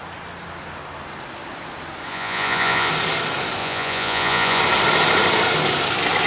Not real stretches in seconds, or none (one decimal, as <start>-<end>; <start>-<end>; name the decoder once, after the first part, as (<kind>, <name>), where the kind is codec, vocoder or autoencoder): 2.1-2.9 (vocoder, Vocos); 3.6-4.6